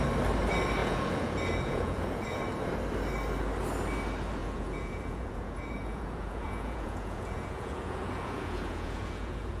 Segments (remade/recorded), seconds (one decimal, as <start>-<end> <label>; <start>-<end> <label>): 0.0-0.8 recorded; 0.8-2.4 remade; 2.4-4.4 recorded; 4.4-9.6 remade